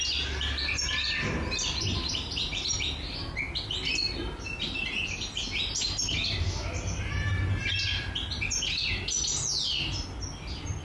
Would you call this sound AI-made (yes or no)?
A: no